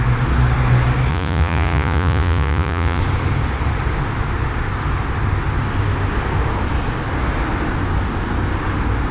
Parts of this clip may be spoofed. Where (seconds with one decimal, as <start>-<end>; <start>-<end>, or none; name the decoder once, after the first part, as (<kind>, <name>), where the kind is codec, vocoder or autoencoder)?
1.1-3.0 (vocoder, Vocos)